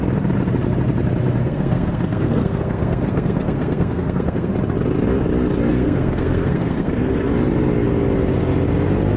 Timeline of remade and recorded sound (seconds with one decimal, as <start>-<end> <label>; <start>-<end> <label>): 0.0-1.4 recorded; 1.4-4.5 remade; 4.5-5.7 recorded; 5.7-7.3 remade; 7.3-9.2 recorded